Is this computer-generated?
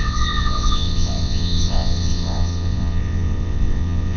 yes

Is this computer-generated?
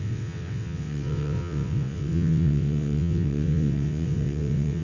yes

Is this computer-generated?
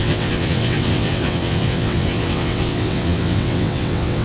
yes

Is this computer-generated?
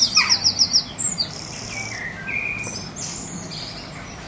no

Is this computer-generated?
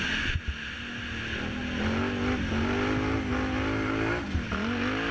no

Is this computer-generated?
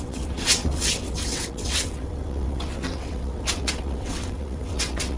yes